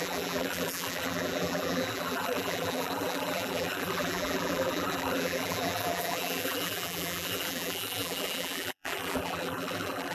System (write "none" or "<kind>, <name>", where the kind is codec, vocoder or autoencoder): vocoder, BigVGAN v2